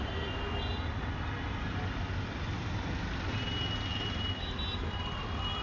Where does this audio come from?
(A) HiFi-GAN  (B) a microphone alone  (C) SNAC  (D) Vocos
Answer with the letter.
B